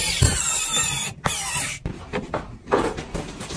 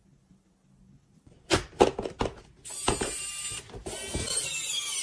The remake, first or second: first